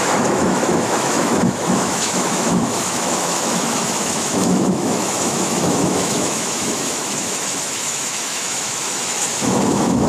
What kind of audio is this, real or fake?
fake